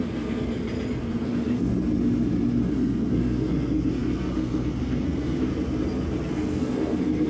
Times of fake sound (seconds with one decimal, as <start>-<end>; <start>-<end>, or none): 0.0-0.5; 1.0-1.7; 2.7-5.5; 6.3-7.3